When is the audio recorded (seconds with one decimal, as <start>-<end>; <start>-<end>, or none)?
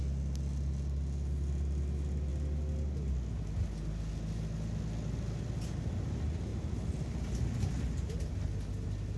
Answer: 0.0-9.2